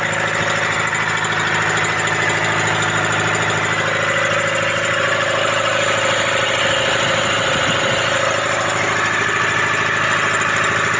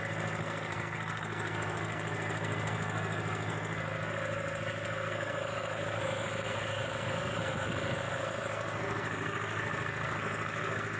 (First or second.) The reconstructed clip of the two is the second